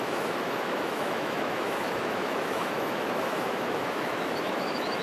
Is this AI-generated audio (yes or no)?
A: yes